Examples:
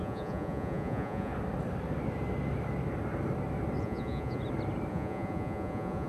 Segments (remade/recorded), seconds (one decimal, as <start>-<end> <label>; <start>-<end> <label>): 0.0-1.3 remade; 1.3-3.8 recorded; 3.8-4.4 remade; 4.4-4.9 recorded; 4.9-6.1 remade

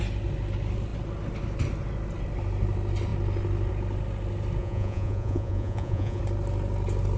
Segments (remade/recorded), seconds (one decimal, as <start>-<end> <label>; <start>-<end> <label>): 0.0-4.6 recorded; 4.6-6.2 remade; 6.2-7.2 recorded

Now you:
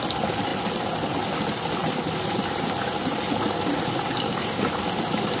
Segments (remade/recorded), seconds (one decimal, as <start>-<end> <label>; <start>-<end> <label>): 0.0-5.4 recorded